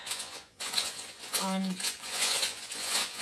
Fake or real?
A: fake